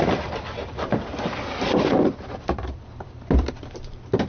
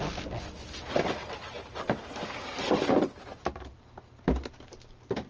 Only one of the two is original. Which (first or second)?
second